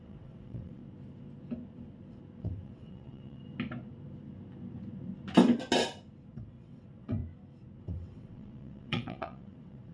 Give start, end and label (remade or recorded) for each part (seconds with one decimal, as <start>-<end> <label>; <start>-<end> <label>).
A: 0.0-0.8 remade; 0.8-2.4 recorded; 2.4-3.4 remade; 3.4-6.3 recorded; 6.3-7.2 remade; 7.2-7.8 recorded; 7.8-9.9 remade